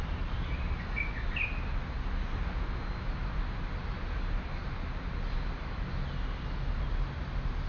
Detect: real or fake real